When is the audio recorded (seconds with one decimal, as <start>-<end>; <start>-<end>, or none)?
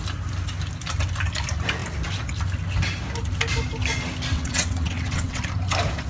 0.0-4.3; 5.4-6.1